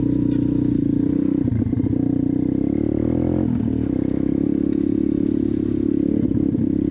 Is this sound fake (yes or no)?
no